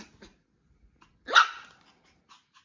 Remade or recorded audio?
recorded